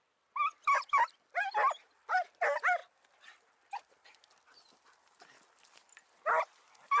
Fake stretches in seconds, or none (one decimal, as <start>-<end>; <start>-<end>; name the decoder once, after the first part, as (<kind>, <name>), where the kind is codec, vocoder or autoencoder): none